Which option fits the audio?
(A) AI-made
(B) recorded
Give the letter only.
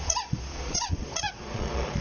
A